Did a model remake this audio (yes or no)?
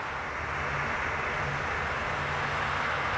no